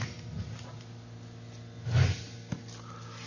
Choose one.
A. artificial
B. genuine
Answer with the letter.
B